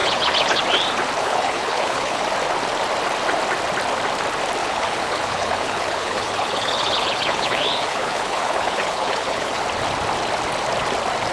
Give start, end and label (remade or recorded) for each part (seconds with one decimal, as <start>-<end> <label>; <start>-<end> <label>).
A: 0.0-0.6 remade; 0.6-1.2 recorded; 1.2-2.2 remade; 2.2-4.6 recorded; 4.6-9.6 remade; 9.6-11.3 recorded